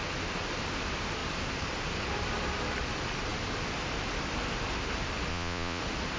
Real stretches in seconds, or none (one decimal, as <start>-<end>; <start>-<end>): 0.0-5.3; 5.8-6.2